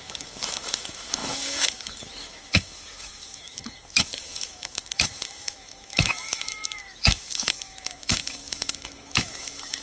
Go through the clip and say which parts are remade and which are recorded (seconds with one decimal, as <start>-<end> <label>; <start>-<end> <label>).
0.0-9.8 remade